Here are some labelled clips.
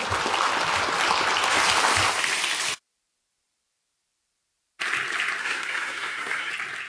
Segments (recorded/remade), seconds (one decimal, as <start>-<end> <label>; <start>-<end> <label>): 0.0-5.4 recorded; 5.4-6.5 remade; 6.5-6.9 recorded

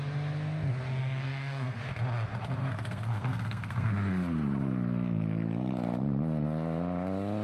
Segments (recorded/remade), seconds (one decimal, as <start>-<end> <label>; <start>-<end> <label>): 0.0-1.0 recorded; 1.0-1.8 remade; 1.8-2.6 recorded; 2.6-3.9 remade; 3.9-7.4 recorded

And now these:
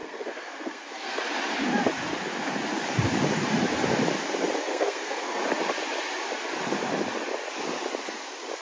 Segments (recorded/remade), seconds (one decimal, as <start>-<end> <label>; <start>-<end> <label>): 0.0-1.2 remade; 1.2-4.6 recorded; 4.6-5.4 remade; 5.4-8.6 recorded

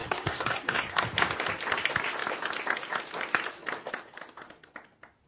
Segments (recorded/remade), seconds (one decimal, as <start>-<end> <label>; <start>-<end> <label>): 0.0-1.0 remade; 1.0-5.3 recorded